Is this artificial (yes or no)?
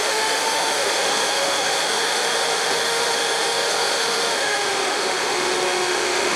yes